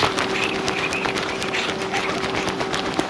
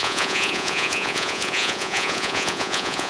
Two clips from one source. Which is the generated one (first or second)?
second